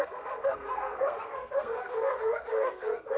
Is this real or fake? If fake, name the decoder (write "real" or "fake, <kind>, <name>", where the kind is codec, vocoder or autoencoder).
fake, codec, SNAC